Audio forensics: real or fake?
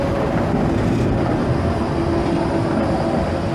real